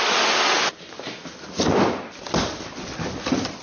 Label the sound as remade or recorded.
recorded